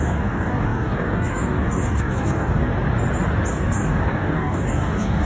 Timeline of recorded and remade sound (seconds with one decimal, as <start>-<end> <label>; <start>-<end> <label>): 0.0-2.7 remade; 2.7-3.5 recorded; 3.5-5.3 remade